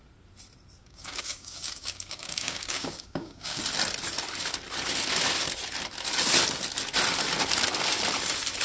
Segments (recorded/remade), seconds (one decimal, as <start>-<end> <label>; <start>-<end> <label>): 0.0-0.8 recorded; 0.8-3.6 remade; 3.6-8.6 recorded